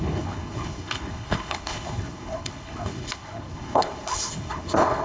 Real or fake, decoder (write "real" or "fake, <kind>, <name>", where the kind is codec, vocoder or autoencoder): fake, codec, HILCodec